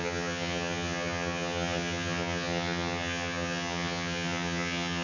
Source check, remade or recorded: remade